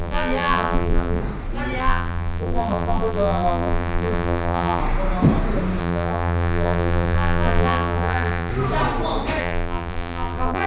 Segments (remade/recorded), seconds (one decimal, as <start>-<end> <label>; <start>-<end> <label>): 0.0-1.2 remade; 1.2-1.8 recorded; 1.8-4.8 remade; 4.8-5.8 recorded; 5.8-8.5 remade; 8.5-9.4 recorded; 9.4-10.7 remade